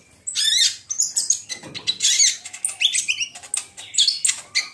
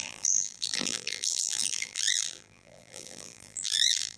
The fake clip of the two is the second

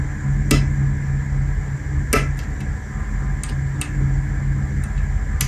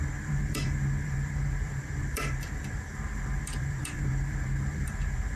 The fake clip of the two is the second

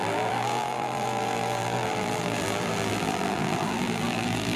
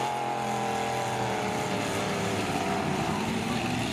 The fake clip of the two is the first